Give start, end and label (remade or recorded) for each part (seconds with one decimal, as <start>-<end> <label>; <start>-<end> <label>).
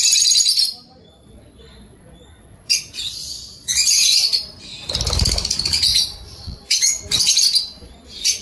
0.0-1.1 recorded; 1.1-4.5 remade; 4.5-5.9 recorded; 5.9-7.0 remade; 7.0-7.6 recorded; 7.6-8.4 remade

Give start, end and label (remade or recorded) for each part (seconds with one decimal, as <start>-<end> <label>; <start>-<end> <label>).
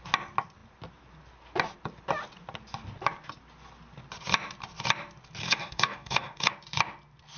0.0-5.4 recorded; 5.4-6.5 remade; 6.5-7.4 recorded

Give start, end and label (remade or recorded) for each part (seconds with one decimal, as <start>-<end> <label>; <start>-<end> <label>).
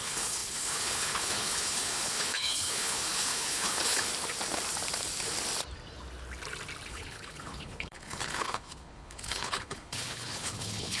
0.0-4.1 remade; 4.1-6.9 recorded; 6.9-11.0 remade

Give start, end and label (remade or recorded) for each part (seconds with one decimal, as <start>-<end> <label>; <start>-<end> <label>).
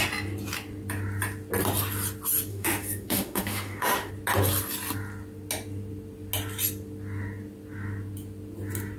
0.0-2.5 recorded; 2.5-4.1 remade; 4.1-9.0 recorded